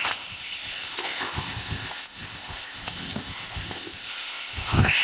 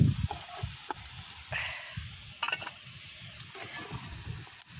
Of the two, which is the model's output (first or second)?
first